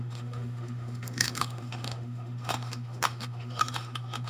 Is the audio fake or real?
fake